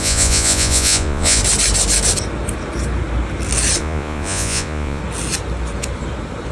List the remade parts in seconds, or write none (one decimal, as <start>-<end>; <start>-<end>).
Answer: 0.0-1.4; 3.8-5.0